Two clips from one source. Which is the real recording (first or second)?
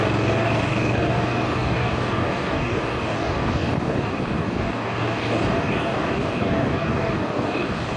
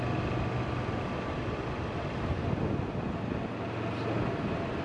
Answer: second